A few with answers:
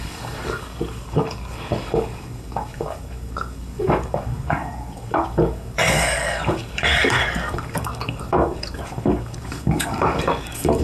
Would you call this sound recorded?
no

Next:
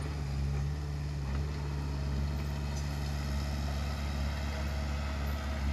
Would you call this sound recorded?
yes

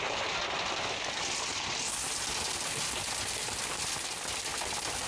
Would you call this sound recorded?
yes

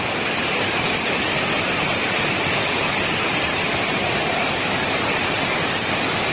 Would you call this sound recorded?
no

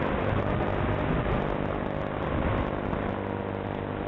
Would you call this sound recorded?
yes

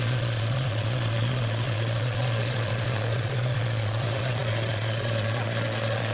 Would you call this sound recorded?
no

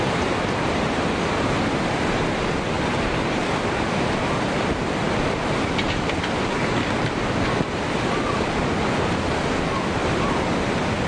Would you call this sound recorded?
no